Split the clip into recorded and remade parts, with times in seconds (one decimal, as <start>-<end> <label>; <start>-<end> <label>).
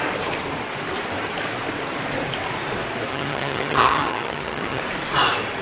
0.0-3.1 recorded; 3.1-4.8 remade; 4.8-5.6 recorded